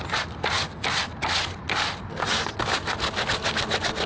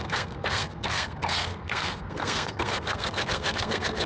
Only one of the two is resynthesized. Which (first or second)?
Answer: second